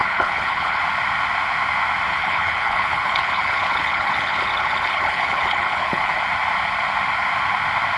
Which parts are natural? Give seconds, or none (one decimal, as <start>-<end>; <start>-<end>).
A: 0.8-2.1; 6.2-8.0